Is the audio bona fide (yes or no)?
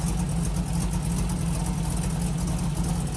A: yes